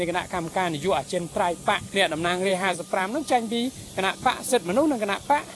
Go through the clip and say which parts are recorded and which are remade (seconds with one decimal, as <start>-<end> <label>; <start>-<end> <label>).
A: 0.0-2.5 recorded; 2.5-3.2 remade; 3.2-5.5 recorded